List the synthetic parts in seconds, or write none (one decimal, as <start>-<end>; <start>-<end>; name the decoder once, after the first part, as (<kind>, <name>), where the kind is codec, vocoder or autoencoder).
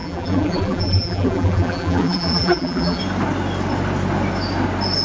0.0-3.0 (vocoder, BigVGAN v2)